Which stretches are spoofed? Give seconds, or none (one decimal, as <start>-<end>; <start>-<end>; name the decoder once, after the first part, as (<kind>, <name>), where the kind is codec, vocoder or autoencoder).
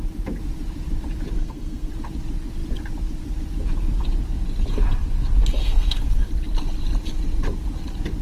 1.4-1.9 (codec, SNAC); 5.6-6.3